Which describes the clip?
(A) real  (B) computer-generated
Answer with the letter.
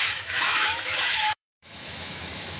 B